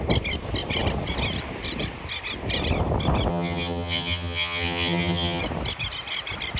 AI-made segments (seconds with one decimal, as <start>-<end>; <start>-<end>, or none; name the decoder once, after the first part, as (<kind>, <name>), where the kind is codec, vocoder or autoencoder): 3.3-5.4 (vocoder, HiFi-GAN)